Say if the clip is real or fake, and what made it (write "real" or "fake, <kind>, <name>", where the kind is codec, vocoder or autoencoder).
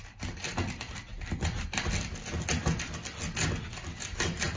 real